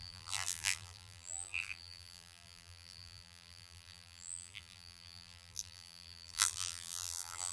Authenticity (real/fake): fake